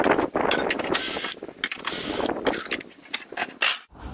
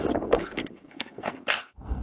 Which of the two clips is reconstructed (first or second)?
second